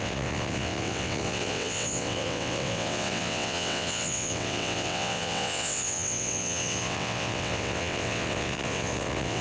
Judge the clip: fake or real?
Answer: fake